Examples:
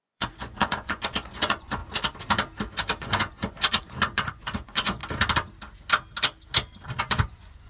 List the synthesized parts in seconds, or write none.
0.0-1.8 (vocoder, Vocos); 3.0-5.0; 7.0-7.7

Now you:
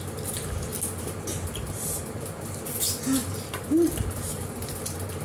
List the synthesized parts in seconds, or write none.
3.2-3.7 (vocoder, BigVGAN v2)

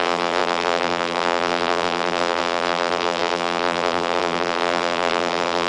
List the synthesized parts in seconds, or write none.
0.0-5.7 (vocoder, BigVGAN v2)

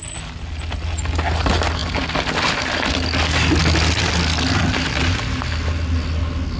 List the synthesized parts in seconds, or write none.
none